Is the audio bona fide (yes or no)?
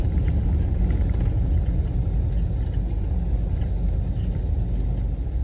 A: yes